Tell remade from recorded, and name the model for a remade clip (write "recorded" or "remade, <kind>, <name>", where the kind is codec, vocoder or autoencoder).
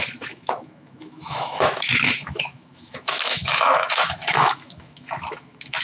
remade, autoencoder, DAC-VAE